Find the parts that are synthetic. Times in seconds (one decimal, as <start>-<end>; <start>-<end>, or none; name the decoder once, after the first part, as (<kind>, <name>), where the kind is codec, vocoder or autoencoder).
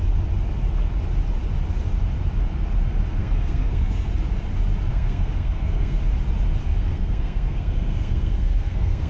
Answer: 3.2-4.1 (codec, SNAC); 4.9-6.0; 6.6-9.1